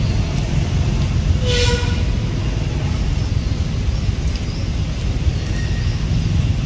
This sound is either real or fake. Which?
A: real